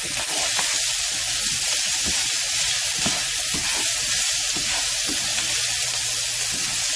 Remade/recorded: recorded